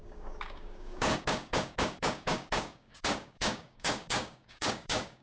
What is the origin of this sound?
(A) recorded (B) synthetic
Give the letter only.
B